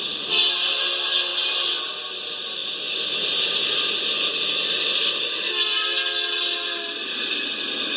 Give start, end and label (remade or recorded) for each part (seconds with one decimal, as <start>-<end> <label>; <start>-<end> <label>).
0.0-8.0 recorded